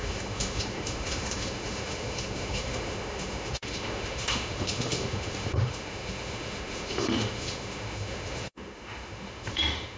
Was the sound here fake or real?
fake